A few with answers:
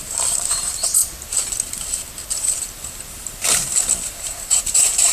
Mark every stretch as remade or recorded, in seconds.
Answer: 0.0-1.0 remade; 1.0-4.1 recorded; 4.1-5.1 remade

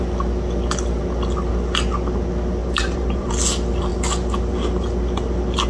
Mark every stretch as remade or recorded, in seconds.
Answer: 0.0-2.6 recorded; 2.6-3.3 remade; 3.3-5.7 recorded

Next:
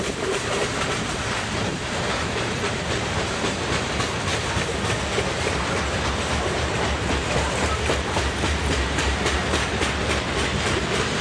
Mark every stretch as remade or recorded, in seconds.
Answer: 0.0-0.6 remade; 0.6-1.1 recorded; 1.1-4.3 remade; 4.3-6.1 recorded; 6.1-11.2 remade

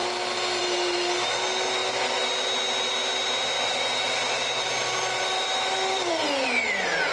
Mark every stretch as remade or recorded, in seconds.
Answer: 0.0-0.6 recorded; 0.6-7.1 remade

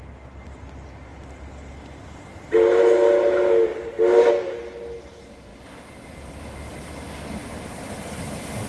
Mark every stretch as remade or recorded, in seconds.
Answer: 0.0-7.5 recorded; 7.5-8.0 remade; 8.0-8.7 recorded

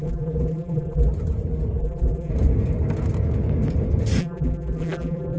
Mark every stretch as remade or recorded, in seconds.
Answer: 0.0-1.1 remade; 1.1-1.8 recorded; 1.8-2.3 remade; 2.3-4.2 recorded; 4.2-5.4 remade

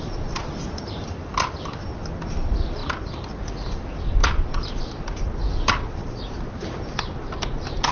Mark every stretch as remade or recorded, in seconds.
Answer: 0.0-1.3 remade; 1.3-2.3 recorded; 2.3-2.8 remade; 2.8-3.4 recorded; 3.4-6.0 remade; 6.0-6.8 recorded; 6.8-7.9 remade